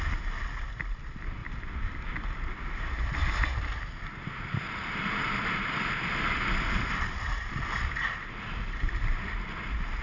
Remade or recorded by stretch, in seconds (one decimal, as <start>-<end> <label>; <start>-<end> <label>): 0.0-1.4 recorded; 1.4-2.1 remade; 2.1-10.0 recorded